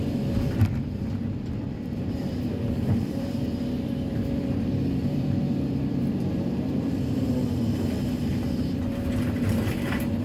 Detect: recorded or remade remade